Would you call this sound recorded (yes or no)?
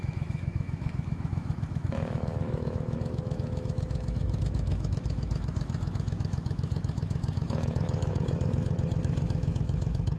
no